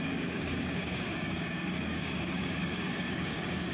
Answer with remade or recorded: remade